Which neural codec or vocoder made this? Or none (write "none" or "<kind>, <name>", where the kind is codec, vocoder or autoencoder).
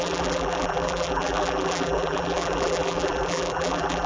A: vocoder, BigVGAN v2